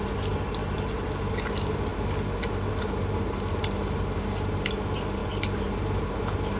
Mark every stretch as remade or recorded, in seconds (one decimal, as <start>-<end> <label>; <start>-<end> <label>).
0.0-6.6 recorded